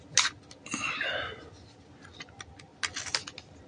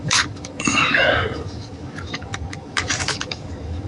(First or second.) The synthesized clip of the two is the second